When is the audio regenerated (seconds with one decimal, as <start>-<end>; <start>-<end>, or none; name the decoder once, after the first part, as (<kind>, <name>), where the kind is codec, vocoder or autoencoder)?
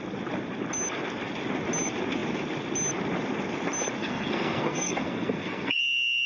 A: 4.0-5.8 (codec, SNAC)